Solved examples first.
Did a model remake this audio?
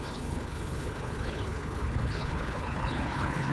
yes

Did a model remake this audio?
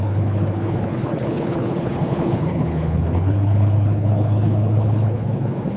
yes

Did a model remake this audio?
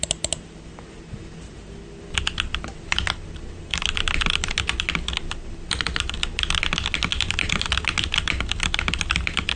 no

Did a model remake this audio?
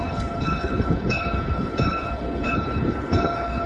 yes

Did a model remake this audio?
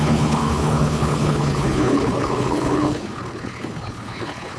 yes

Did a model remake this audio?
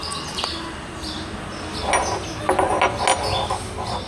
no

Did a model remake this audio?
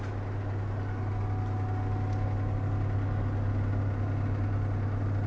no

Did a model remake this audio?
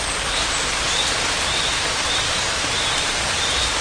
no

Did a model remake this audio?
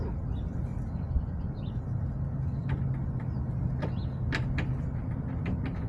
no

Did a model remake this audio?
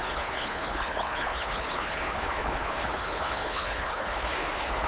yes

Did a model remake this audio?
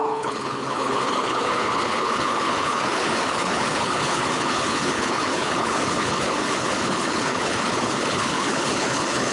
yes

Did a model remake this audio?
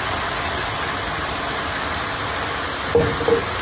no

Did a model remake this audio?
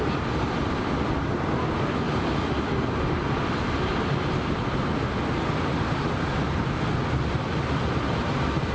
no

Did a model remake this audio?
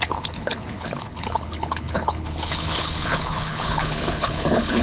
yes